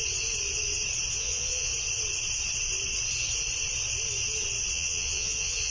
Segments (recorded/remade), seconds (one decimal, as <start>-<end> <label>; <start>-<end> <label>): 0.0-1.1 recorded; 1.1-1.7 remade; 1.7-4.7 recorded; 4.7-5.7 remade